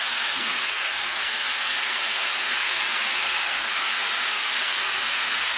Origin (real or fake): fake